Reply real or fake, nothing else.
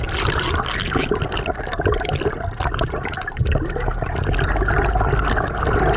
real